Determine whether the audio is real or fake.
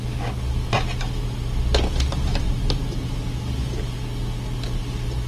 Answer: fake